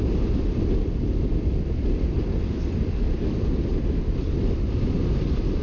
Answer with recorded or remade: remade